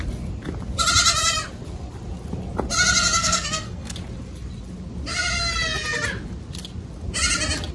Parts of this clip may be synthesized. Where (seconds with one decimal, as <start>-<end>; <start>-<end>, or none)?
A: 3.2-3.9